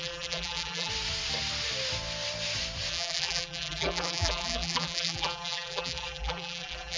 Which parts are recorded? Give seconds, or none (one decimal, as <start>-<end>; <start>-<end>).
0.9-2.9